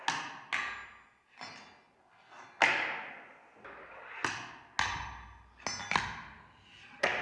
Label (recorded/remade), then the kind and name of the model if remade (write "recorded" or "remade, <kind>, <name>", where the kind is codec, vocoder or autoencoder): recorded